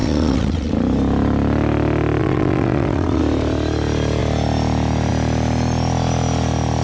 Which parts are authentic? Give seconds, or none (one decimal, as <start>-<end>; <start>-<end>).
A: 0.7-2.2; 3.2-6.8